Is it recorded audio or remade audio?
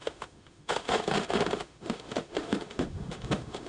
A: remade